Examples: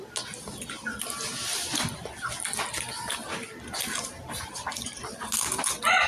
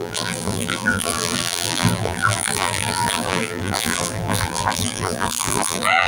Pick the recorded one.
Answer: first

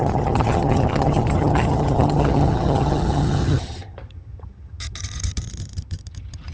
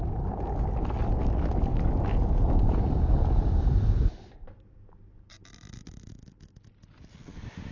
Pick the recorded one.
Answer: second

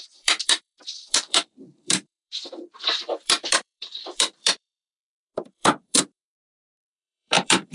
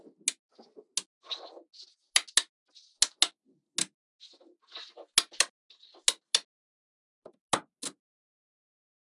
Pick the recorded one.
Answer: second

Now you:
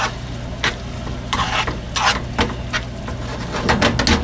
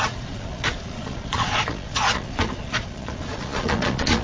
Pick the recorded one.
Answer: first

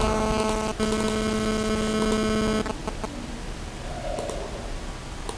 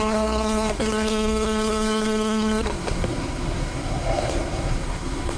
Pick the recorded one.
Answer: first